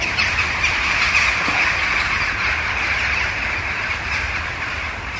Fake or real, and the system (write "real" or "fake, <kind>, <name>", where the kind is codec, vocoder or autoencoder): real